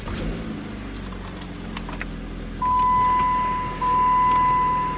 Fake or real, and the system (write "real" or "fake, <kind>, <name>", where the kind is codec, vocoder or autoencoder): real